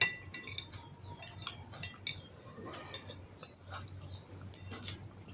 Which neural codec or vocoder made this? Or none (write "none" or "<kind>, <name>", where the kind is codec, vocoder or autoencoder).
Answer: none